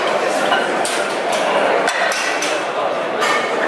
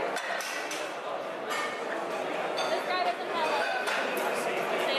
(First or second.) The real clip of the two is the second